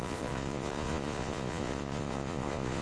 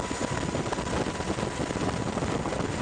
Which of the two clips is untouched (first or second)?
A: second